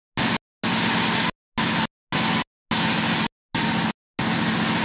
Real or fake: real